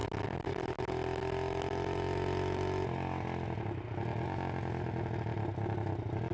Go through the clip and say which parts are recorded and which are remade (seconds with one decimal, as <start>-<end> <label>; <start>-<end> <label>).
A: 0.0-6.3 recorded